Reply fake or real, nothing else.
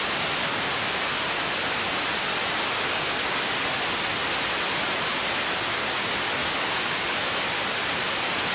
real